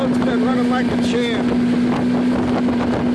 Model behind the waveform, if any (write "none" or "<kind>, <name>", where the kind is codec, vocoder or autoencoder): none